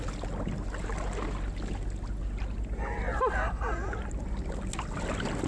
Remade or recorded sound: recorded